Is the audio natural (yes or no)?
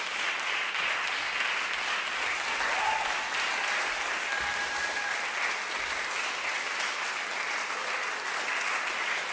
yes